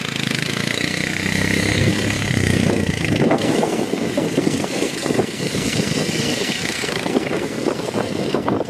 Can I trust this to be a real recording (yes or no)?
no